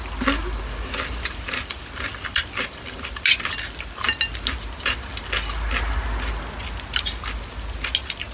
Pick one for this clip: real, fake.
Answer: real